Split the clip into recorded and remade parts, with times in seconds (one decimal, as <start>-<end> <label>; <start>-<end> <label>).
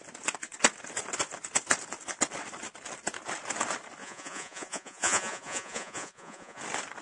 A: 0.0-4.0 recorded; 4.0-6.6 remade; 6.6-7.0 recorded